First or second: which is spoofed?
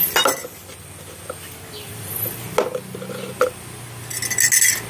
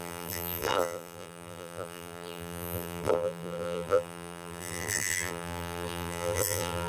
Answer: second